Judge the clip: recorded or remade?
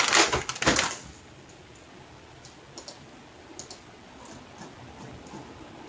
recorded